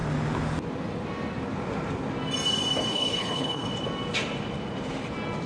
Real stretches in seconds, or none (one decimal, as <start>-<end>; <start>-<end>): 0.0-2.9; 3.7-5.5